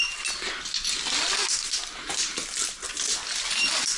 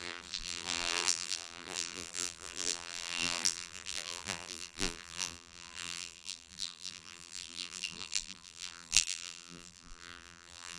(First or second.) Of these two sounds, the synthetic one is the second